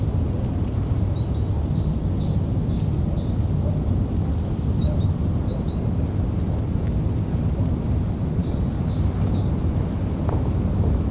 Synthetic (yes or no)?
no